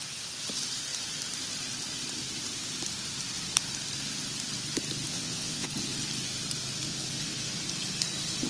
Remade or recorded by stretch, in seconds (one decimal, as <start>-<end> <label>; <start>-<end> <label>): 0.0-5.1 recorded; 5.1-5.7 remade; 5.7-8.5 recorded